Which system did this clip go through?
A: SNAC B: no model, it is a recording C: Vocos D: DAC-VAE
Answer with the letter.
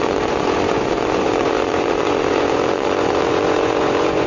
C